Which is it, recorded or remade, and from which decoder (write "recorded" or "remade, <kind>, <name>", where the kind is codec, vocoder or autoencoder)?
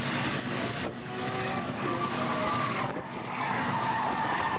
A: remade, codec, DAC